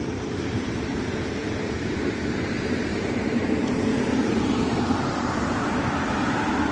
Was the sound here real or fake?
fake